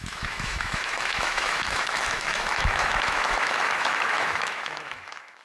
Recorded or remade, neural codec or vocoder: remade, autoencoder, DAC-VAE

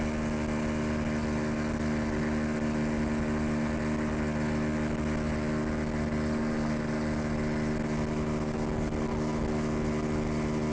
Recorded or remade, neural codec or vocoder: recorded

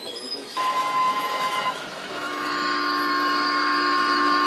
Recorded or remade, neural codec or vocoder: remade, autoencoder, DAC-VAE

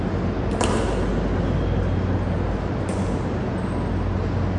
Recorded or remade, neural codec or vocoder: recorded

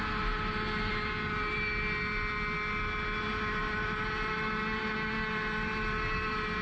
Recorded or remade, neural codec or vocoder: recorded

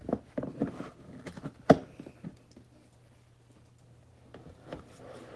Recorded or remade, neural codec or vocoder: recorded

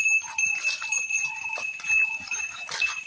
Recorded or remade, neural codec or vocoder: recorded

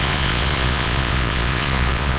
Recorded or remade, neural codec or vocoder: remade, vocoder, Vocos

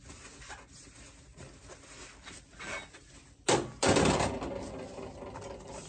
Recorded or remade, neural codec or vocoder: recorded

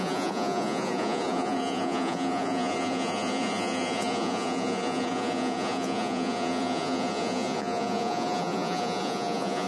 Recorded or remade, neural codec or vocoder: remade, vocoder, Vocos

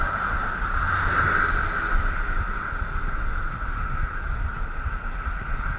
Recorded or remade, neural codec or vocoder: recorded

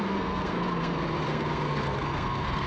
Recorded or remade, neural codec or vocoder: remade, codec, SNAC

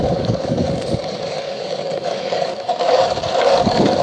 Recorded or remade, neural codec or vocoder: remade, codec, DAC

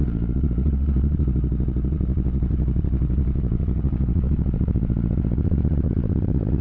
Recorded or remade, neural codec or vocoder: remade, vocoder, Vocos